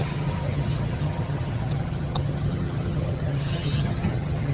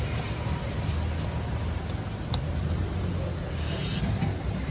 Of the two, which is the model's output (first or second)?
first